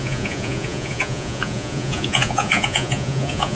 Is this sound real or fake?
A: fake